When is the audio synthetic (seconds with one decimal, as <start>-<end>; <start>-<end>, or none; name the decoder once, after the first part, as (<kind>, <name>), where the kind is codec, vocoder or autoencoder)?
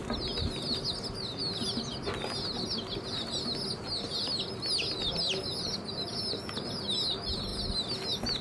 none